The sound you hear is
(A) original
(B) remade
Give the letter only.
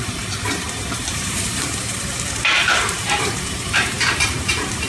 B